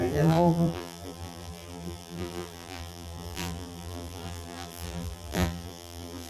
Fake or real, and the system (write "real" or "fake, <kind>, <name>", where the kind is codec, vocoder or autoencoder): fake, vocoder, BigVGAN v2